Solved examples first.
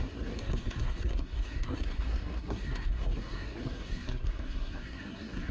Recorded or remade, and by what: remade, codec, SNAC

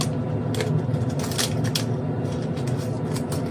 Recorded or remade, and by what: recorded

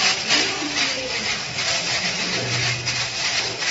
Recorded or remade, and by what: remade, vocoder, BigVGAN v2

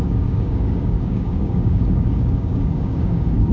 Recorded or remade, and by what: remade, codec, DAC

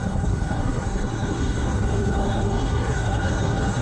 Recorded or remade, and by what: remade, codec, SNAC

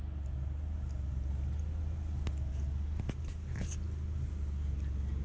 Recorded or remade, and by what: recorded